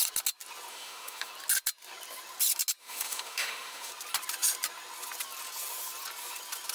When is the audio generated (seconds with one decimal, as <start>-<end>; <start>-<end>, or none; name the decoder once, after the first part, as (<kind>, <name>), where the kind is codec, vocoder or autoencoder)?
0.7-1.3 (autoencoder, DAC-VAE); 2.8-3.9